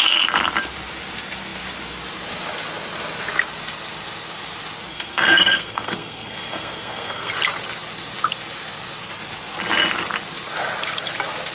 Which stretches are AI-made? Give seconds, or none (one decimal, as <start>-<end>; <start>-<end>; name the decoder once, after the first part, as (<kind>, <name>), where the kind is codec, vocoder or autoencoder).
4.9-7.3 (codec, SNAC)